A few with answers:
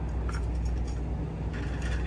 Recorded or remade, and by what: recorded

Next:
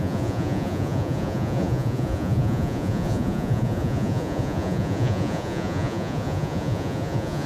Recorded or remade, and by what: remade, vocoder, Vocos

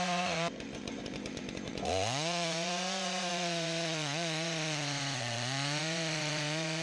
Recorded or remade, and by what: remade, vocoder, Vocos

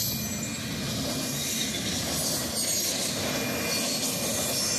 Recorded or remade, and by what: recorded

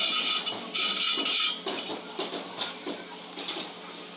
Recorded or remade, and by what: recorded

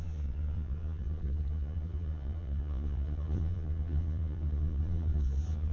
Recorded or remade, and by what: remade, vocoder, Vocos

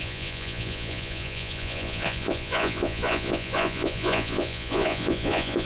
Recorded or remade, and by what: remade, vocoder, Vocos